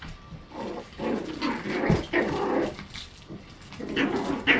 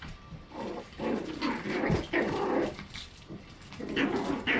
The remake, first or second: second